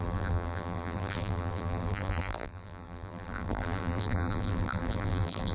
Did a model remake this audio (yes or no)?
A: yes